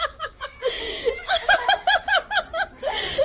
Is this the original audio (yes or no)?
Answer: no